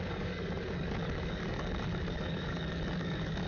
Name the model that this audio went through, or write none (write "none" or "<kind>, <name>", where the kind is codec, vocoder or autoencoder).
codec, DAC